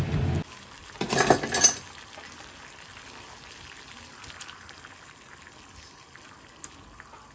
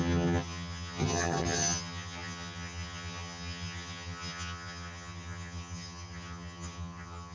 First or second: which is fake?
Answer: second